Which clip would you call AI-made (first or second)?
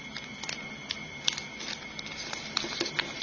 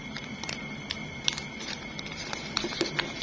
second